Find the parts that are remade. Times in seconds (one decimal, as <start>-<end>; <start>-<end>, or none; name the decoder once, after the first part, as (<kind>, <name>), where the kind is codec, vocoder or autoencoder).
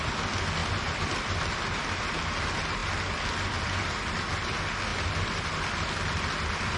0.6-1.6 (vocoder, BigVGAN v2); 4.9-5.5